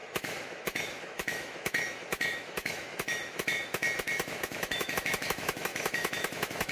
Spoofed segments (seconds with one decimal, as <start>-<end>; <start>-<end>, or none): 0.0-6.7